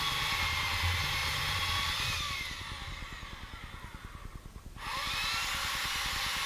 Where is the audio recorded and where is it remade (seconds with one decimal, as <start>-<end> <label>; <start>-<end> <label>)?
0.0-6.5 recorded